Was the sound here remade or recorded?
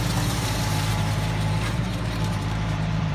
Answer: remade